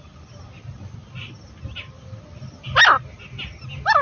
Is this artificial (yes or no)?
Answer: no